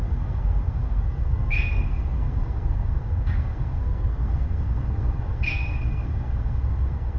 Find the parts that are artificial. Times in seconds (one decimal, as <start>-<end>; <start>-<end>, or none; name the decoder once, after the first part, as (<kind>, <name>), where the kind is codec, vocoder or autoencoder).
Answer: 0.0-7.2 (codec, SNAC)